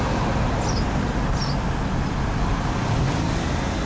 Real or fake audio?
real